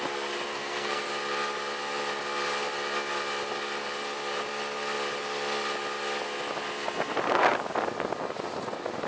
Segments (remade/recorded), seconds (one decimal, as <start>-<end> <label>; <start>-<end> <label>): 0.0-0.5 recorded; 0.5-1.1 remade; 1.1-9.1 recorded

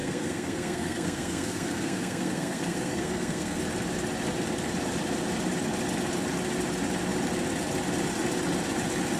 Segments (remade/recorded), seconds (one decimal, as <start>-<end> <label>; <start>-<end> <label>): 0.0-3.6 remade; 3.6-9.2 recorded